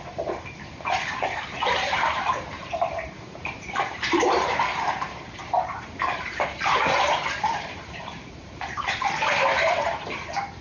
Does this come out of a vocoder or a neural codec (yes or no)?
yes